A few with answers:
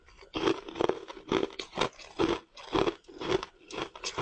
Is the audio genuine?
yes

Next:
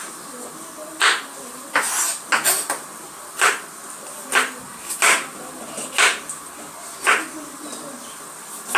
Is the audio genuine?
yes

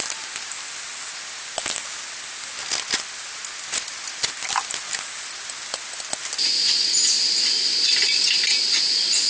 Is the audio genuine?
yes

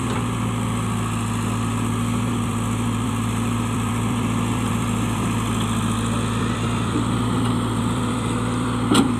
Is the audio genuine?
no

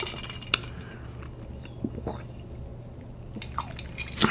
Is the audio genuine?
yes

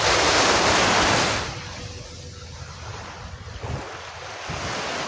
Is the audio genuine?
yes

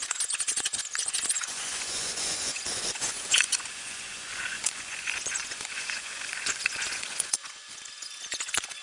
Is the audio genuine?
no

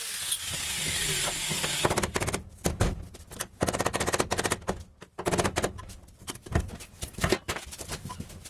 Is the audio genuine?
yes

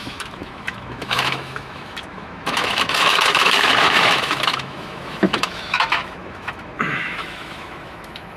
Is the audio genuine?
no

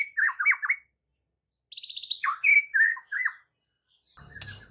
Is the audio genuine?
yes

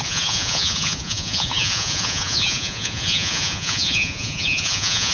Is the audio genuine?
no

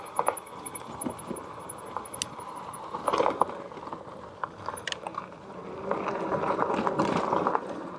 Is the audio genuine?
yes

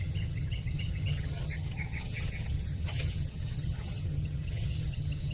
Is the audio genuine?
no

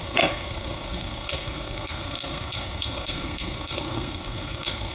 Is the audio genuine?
no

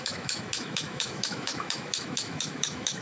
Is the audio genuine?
no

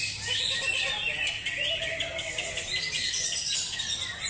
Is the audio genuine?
yes